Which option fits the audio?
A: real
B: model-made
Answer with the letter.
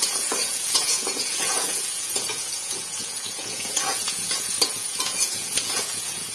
B